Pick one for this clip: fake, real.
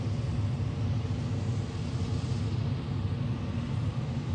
real